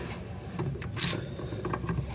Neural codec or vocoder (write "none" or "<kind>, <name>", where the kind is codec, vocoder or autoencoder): none